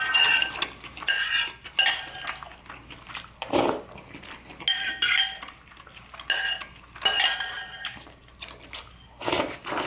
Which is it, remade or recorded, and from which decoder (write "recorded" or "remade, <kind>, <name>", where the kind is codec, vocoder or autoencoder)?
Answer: recorded